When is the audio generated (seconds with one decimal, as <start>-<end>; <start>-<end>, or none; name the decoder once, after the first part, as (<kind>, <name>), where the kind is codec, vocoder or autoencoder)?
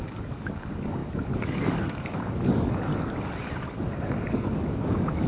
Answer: 0.0-2.9 (codec, DAC); 4.3-5.3